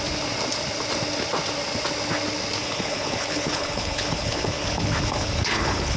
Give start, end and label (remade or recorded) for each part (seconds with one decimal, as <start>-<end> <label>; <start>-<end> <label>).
0.0-2.6 recorded; 2.6-6.0 remade